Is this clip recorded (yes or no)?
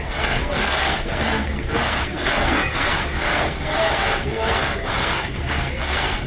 no